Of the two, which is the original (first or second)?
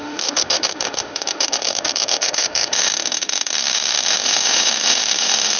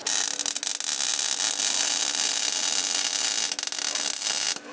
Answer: second